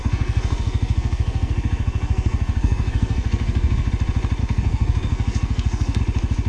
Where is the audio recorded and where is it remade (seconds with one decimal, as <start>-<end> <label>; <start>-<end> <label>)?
0.0-3.9 remade; 3.9-4.4 recorded; 4.4-6.0 remade; 6.0-6.5 recorded